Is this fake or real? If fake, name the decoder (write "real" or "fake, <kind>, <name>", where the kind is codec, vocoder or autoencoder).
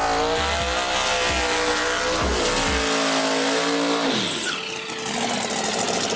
real